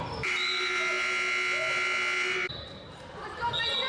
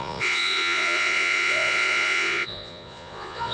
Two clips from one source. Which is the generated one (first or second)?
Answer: second